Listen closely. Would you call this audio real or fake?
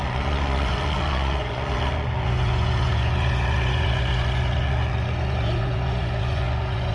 fake